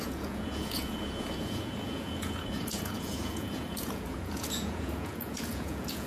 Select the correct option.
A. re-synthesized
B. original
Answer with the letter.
A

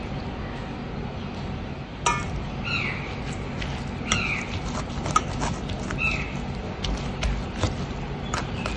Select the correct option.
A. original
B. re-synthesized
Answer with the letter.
A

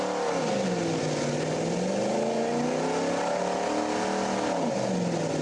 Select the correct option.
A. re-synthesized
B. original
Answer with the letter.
B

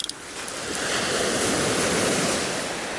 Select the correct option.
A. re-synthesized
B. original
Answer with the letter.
B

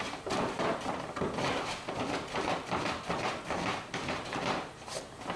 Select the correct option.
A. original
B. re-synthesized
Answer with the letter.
A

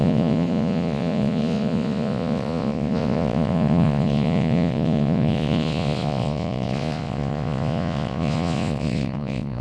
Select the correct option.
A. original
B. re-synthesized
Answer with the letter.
B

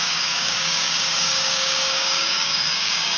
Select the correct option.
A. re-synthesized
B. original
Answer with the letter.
A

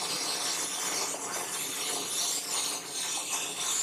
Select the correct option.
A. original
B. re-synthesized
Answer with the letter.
A